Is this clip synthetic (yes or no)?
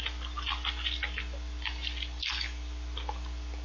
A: no